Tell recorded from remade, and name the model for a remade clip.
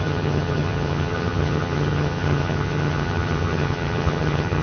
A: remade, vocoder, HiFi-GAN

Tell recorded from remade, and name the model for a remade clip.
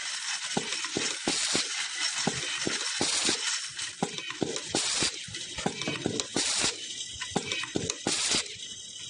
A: recorded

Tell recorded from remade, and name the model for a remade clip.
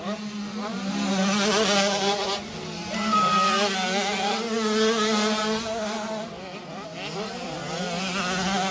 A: recorded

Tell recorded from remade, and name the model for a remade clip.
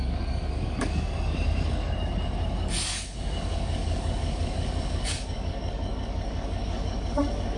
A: remade, codec, DAC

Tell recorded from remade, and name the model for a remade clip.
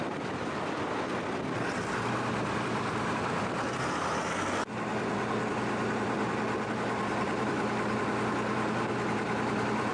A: remade, vocoder, BigVGAN v2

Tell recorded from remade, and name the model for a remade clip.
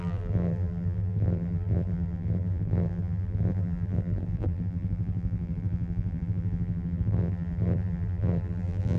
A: remade, vocoder, BigVGAN v2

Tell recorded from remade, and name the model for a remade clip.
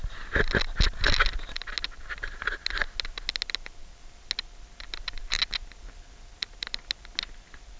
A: recorded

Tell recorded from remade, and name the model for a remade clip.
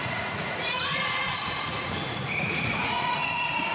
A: remade, vocoder, Vocos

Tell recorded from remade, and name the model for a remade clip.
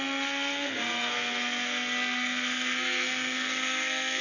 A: remade, codec, SNAC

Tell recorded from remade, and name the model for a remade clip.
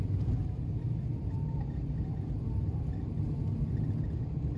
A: recorded